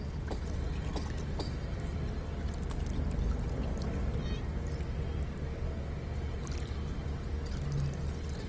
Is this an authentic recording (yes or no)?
yes